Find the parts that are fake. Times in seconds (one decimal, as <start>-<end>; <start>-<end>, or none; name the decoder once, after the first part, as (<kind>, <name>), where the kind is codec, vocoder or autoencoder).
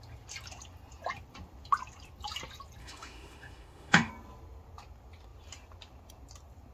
2.8-4.1 (autoencoder, DAC-VAE)